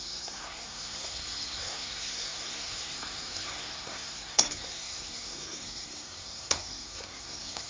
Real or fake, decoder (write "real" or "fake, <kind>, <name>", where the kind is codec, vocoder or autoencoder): fake, codec, SNAC